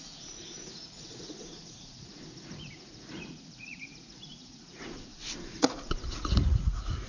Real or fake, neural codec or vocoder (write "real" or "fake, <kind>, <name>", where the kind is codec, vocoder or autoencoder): fake, vocoder, Vocos